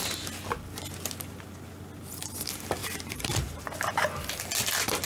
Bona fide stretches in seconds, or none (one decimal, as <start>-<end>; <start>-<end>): 0.0-2.8; 3.6-5.1